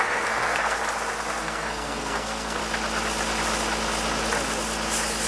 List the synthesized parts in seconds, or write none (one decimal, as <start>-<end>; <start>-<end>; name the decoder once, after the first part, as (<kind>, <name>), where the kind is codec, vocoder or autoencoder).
0.0-0.8 (codec, SNAC); 1.4-2.6